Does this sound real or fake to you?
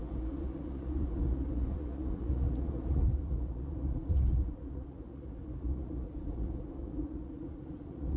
fake